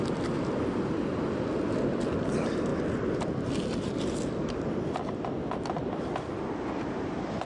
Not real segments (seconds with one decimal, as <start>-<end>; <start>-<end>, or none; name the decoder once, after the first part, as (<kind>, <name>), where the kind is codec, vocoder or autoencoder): none